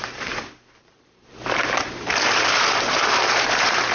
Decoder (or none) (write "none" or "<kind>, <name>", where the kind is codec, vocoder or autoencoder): vocoder, BigVGAN v2